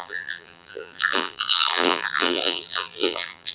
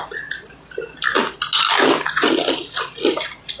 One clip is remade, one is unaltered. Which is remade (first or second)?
first